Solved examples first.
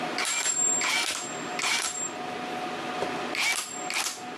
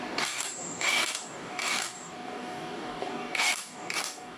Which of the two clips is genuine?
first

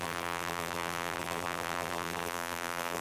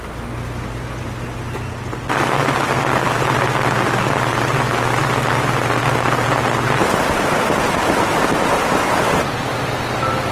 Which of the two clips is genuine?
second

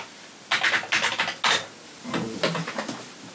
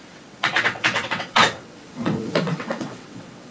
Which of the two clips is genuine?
first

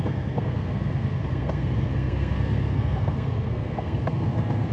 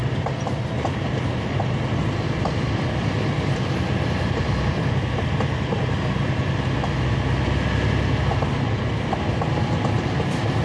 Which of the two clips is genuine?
second